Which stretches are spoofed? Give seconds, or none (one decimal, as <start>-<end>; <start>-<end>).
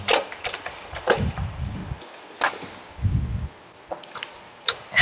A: 0.0-1.8; 4.6-5.0